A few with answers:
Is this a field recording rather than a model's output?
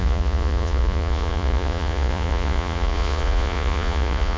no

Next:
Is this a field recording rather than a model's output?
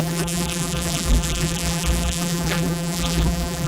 no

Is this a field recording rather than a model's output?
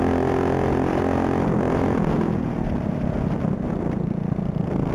yes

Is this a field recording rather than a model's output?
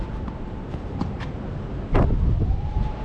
no